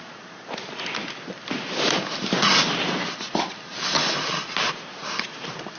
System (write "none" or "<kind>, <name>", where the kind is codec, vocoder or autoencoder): none